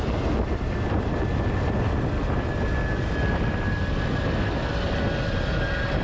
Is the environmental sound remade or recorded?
recorded